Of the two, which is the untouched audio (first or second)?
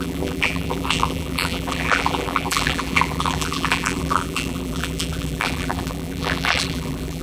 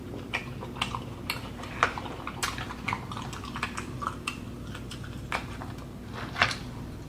second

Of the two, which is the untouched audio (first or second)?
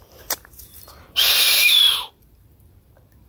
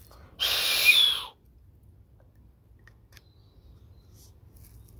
second